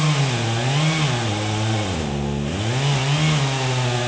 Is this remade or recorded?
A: recorded